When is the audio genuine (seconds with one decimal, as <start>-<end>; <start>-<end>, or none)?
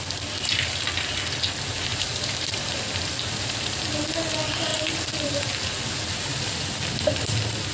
0.0-1.9; 3.8-4.7; 5.5-7.7